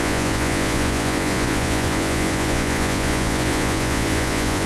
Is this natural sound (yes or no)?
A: no